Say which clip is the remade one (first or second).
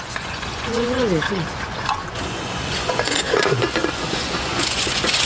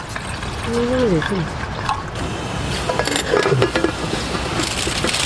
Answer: first